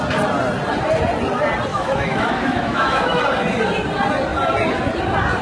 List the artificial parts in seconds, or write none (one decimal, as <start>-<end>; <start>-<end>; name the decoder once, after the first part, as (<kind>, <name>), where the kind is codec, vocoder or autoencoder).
1.7-3.2 (autoencoder, DAC-VAE)